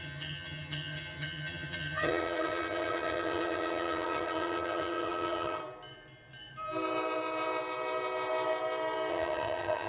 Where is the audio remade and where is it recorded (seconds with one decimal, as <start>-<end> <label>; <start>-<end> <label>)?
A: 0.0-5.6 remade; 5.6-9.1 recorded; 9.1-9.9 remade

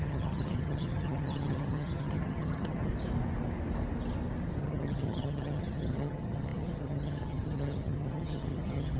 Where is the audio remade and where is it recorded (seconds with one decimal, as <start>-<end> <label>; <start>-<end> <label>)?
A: 0.0-2.9 remade; 2.9-4.6 recorded; 4.6-9.0 remade

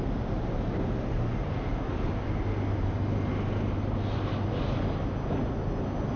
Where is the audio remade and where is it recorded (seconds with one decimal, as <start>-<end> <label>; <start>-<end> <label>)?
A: 0.0-6.2 recorded

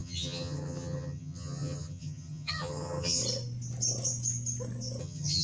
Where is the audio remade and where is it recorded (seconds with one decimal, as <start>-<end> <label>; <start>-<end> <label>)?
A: 0.0-3.2 remade; 3.2-5.0 recorded; 5.0-5.4 remade

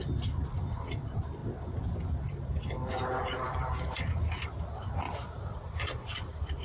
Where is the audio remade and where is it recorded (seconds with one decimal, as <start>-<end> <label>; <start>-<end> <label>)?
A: 0.0-6.6 recorded

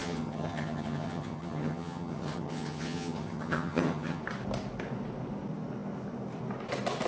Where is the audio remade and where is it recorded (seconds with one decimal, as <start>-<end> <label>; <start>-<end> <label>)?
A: 0.0-4.2 remade; 4.2-7.1 recorded

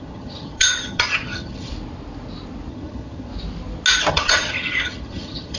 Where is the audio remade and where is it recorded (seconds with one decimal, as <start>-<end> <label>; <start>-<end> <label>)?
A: 0.0-1.7 remade; 1.7-2.7 recorded; 2.7-3.3 remade; 3.3-4.1 recorded; 4.1-5.6 remade